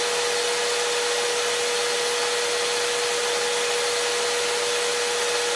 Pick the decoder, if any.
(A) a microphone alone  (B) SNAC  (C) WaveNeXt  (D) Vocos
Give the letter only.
A